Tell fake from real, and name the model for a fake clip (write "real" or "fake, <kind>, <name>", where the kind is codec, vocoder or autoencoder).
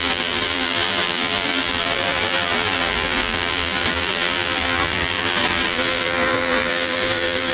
fake, vocoder, BigVGAN v2